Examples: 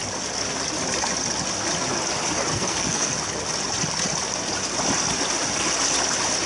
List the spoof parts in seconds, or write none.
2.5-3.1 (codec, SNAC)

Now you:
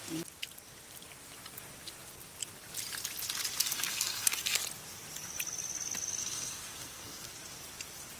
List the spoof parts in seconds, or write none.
3.6-4.6 (codec, SNAC); 6.2-7.3

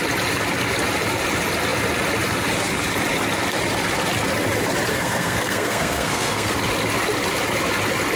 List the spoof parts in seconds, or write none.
4.9-6.5 (codec, SNAC)

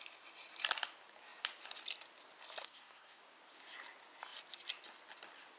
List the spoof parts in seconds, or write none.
2.6-3.2 (codec, SNAC)